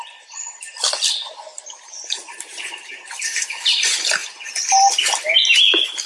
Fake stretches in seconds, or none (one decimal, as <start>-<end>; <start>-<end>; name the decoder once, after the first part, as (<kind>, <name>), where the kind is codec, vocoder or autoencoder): none